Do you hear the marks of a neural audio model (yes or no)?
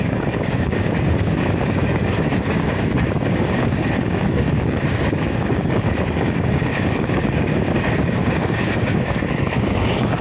yes